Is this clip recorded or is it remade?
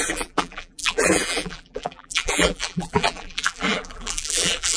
remade